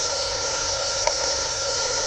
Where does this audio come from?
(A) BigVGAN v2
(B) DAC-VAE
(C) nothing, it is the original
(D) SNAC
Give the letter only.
D